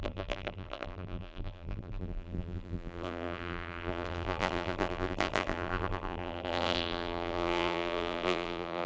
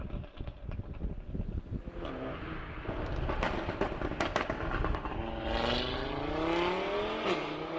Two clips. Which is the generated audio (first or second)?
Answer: first